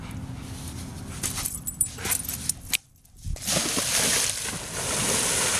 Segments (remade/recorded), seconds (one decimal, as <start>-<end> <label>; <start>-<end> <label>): 0.0-0.9 recorded; 0.9-4.1 remade; 4.1-5.6 recorded